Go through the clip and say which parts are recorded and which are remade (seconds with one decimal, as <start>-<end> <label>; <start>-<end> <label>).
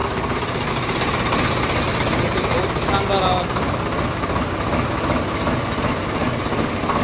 0.0-7.0 recorded